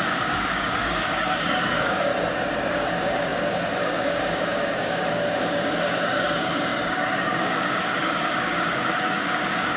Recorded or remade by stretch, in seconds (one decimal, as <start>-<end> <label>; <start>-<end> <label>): 0.0-2.1 remade; 2.1-2.7 recorded; 2.7-9.8 remade